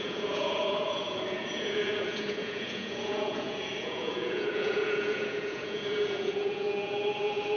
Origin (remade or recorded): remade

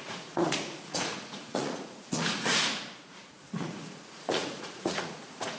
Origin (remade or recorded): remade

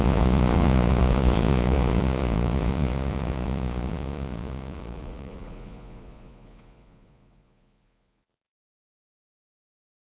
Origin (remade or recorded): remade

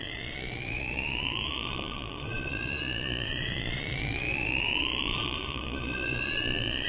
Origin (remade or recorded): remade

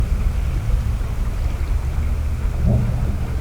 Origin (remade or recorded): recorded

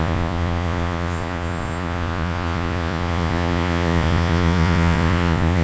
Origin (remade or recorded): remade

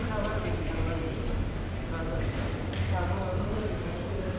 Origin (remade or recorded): recorded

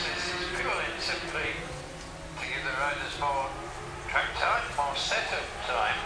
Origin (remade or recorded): recorded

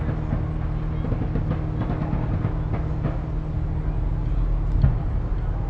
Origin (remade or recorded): recorded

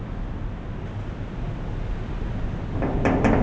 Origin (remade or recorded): recorded